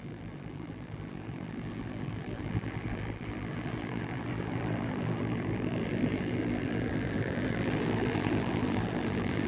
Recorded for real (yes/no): no